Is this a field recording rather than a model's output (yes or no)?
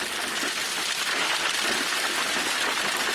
yes